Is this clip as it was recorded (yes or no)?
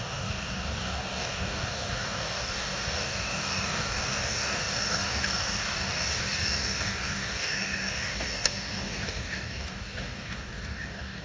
no